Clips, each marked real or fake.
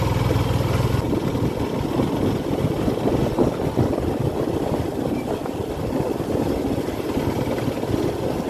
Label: real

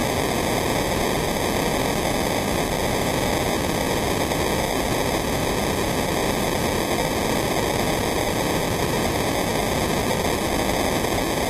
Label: real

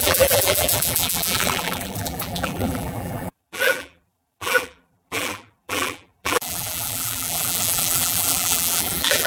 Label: fake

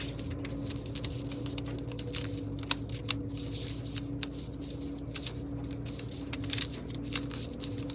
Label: real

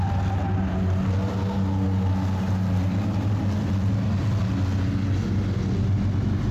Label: real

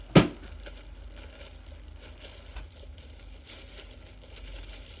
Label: real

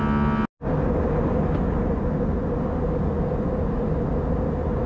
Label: real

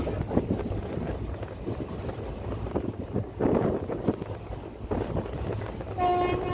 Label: real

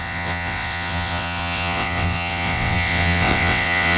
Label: fake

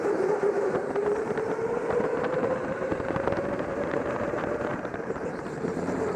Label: fake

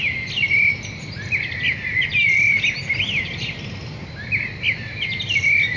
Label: real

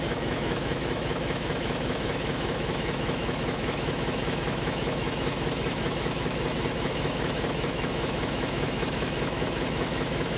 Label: fake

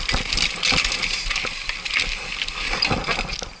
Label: real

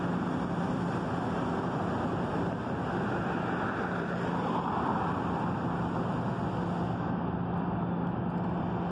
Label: real